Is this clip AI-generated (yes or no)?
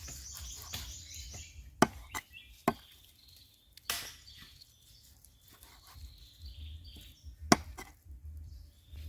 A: no